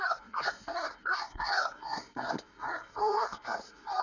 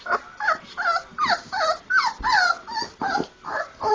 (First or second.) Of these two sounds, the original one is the second